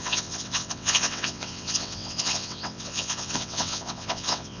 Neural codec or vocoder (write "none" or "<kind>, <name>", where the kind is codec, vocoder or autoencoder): vocoder, WaveNeXt